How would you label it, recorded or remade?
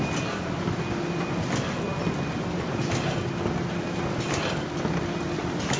recorded